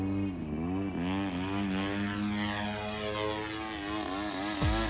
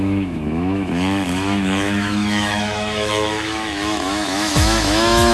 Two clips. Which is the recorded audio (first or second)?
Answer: first